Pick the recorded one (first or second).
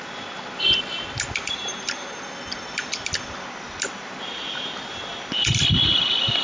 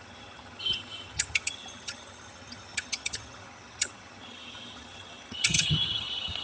first